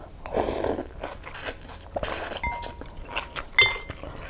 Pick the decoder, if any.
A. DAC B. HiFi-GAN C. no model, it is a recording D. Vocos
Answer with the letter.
C